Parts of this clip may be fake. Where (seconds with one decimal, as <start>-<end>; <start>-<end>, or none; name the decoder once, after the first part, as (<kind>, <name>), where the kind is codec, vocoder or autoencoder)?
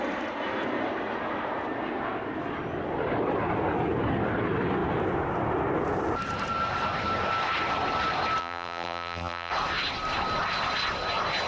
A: 8.4-9.5 (vocoder, BigVGAN v2)